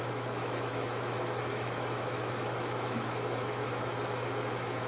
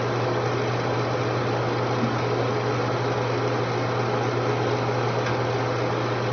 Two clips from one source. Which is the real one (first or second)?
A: second